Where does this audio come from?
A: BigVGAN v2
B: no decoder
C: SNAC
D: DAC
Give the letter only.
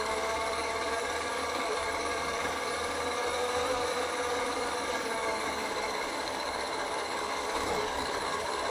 D